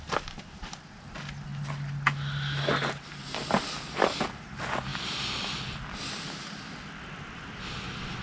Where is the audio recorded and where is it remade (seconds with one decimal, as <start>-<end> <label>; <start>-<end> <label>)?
0.0-8.2 recorded